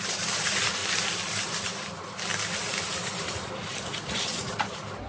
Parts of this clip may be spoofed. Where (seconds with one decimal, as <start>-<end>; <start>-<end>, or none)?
none